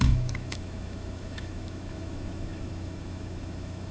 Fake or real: fake